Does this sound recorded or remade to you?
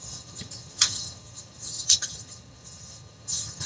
remade